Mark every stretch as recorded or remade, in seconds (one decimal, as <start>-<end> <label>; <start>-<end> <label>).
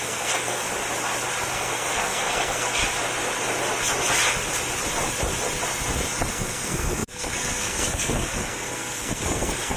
0.0-0.7 remade; 0.7-1.5 recorded; 1.5-2.8 remade; 2.8-6.3 recorded; 6.3-9.8 remade